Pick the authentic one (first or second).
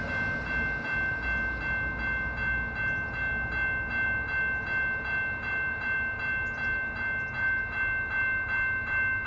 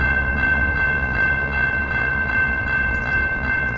first